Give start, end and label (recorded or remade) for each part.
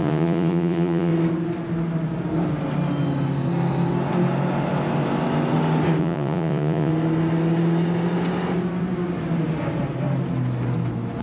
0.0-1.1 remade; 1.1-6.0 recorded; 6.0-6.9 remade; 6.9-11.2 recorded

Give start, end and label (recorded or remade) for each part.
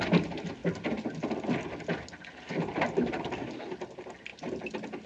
0.0-5.1 recorded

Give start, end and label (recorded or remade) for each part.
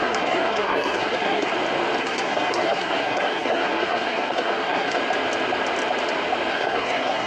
0.0-1.5 remade; 1.5-2.0 recorded; 2.0-5.0 remade; 5.0-6.5 recorded; 6.5-7.3 remade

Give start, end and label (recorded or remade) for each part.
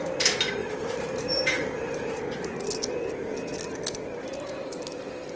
0.0-0.6 recorded; 0.6-2.6 remade; 2.6-4.1 recorded; 4.1-4.7 remade; 4.7-5.4 recorded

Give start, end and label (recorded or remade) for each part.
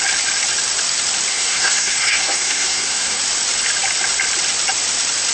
0.0-1.3 recorded; 1.3-3.2 remade; 3.2-5.3 recorded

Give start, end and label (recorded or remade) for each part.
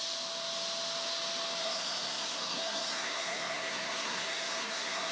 0.0-1.6 recorded; 1.6-5.1 remade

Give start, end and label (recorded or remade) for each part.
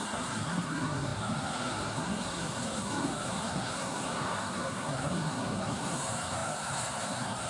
0.0-7.5 remade